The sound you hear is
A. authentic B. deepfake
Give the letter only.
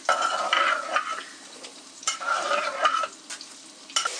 A